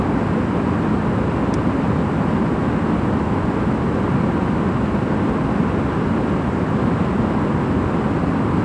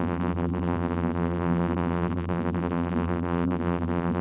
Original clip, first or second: first